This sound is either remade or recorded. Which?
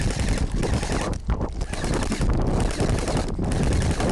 recorded